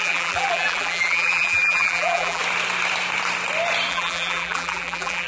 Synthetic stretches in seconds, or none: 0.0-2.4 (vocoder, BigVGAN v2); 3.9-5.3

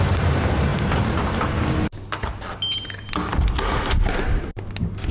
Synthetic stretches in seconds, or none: 0.7-1.5 (vocoder, BigVGAN v2); 3.3-4.6

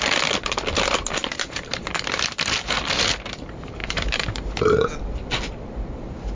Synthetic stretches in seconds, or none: 1.2-1.8 (vocoder, BigVGAN v2); 3.8-4.4

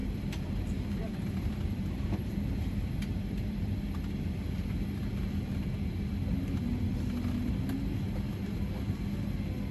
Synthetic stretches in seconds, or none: 0.0-3.7 (vocoder, BigVGAN v2)